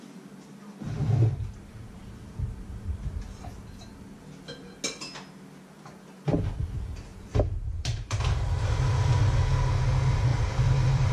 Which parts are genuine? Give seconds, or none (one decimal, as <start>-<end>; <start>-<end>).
0.0-1.8; 2.3-7.1; 8.8-10.3